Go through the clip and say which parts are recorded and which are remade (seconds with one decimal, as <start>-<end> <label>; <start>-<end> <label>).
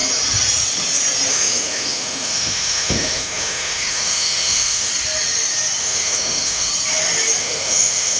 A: 0.0-1.3 recorded; 1.3-4.9 remade; 4.9-5.8 recorded; 5.8-6.7 remade; 6.7-7.4 recorded; 7.4-8.2 remade